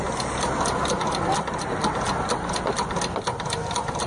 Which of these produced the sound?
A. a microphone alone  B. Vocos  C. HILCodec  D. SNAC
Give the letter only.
A